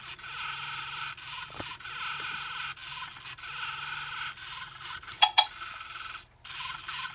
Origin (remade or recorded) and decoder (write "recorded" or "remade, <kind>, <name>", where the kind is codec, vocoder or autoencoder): recorded